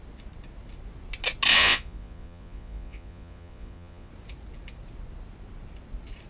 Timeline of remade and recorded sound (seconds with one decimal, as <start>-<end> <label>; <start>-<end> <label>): 0.0-1.5 recorded; 1.5-4.1 remade; 4.1-6.3 recorded